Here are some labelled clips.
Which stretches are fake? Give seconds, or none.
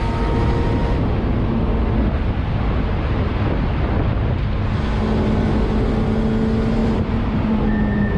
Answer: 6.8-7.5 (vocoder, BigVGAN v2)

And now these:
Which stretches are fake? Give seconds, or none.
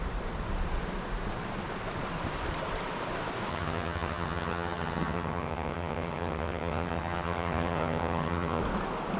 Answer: 3.5-8.6 (vocoder, HiFi-GAN)